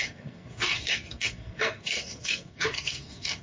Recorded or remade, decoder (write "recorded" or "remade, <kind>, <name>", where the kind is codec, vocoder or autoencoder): remade, codec, SNAC